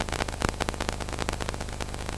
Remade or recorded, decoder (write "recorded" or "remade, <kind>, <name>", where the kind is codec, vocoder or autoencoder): recorded